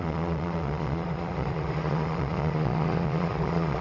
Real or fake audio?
fake